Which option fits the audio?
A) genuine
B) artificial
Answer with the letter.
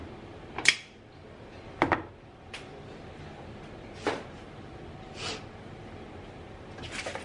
A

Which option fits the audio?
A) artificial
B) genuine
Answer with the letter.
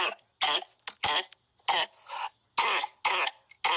B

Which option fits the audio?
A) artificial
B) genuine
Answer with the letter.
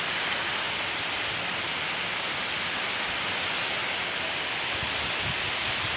B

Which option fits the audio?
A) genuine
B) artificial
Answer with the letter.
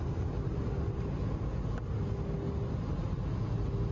A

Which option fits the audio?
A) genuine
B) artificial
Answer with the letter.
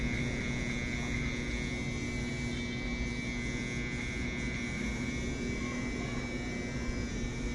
A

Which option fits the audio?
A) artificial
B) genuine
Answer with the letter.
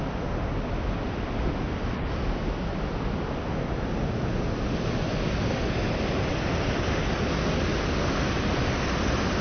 B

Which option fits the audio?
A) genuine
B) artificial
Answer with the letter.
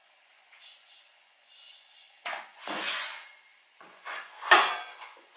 B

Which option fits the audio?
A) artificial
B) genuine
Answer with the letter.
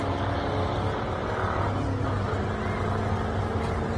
B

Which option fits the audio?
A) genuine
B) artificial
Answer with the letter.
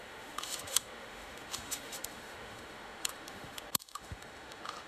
B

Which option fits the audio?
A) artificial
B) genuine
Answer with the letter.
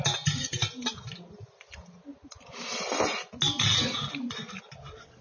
B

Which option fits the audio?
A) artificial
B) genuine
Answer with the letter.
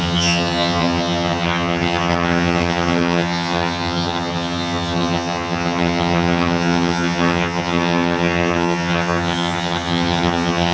A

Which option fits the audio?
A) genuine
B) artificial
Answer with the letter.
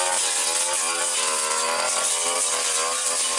A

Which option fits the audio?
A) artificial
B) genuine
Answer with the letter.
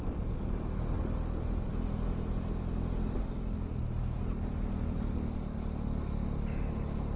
B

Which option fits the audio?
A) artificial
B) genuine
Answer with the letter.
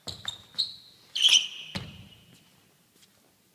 B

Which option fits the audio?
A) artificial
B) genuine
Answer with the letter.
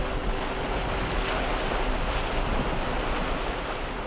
B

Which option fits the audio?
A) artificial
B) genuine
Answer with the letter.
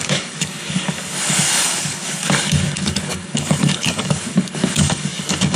A